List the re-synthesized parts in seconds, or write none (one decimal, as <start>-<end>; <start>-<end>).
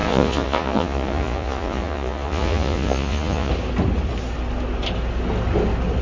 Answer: 0.0-3.5